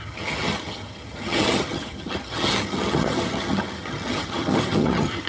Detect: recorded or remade remade